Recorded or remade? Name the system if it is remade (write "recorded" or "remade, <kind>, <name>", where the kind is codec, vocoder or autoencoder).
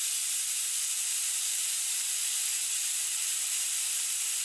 remade, vocoder, BigVGAN v2